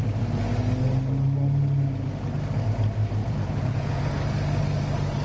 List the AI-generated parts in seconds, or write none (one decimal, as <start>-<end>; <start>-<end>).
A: 3.2-4.0